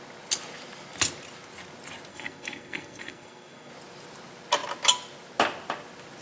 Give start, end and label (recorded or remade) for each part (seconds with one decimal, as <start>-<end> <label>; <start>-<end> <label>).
0.0-2.1 recorded; 2.1-3.7 remade; 3.7-6.2 recorded